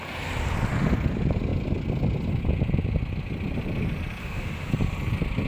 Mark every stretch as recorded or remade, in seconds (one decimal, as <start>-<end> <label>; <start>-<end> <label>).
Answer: 0.0-4.2 recorded; 4.2-4.7 remade; 4.7-5.5 recorded